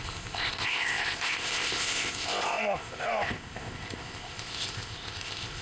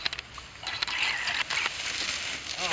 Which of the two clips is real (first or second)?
second